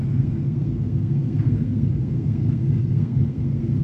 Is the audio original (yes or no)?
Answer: no